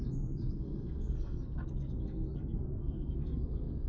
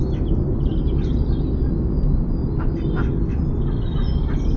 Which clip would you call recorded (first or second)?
second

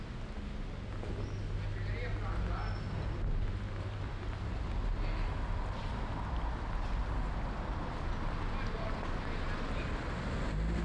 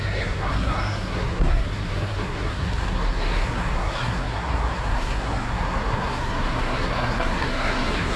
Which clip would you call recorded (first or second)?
first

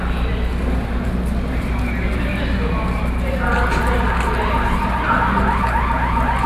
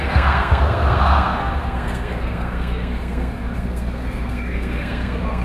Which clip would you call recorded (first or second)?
first